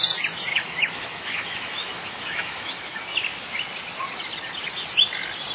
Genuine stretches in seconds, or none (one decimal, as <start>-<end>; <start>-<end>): 0.0-0.5; 3.0-5.5